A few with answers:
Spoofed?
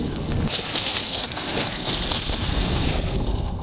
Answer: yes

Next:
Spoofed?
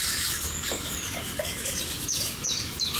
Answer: yes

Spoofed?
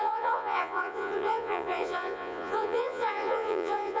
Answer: yes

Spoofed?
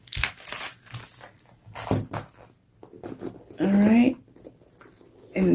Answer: no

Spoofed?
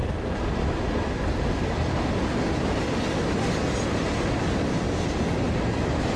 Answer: no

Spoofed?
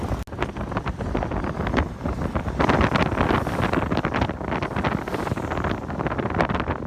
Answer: no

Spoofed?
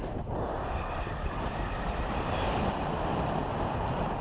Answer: yes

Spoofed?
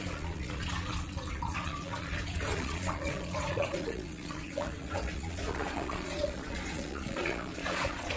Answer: yes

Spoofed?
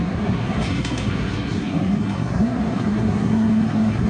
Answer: yes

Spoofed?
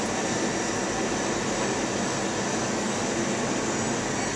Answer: no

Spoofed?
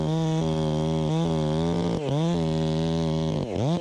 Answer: no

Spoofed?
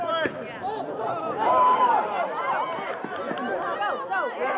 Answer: no